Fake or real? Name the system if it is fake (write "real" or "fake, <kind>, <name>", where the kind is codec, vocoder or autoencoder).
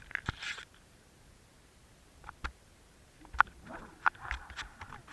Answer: real